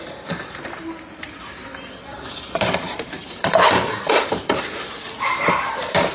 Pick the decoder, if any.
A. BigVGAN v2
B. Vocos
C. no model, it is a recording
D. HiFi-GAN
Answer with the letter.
A